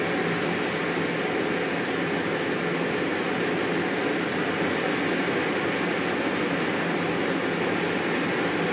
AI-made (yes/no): no